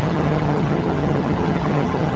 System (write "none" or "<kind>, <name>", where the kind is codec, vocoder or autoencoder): vocoder, HiFi-GAN